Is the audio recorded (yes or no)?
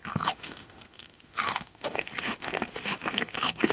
no